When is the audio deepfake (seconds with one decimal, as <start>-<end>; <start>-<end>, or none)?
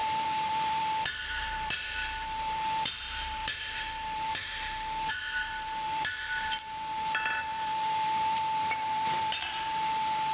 0.0-10.3